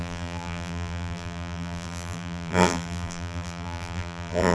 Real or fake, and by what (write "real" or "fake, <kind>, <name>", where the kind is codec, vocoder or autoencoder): fake, vocoder, BigVGAN v2